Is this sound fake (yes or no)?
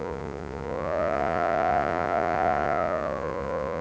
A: yes